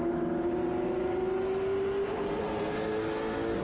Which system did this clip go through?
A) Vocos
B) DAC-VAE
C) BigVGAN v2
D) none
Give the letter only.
D